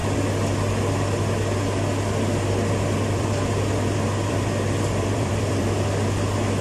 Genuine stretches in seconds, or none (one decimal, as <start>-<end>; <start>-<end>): 0.0-2.5